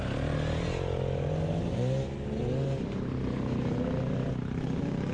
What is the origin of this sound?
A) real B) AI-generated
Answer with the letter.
A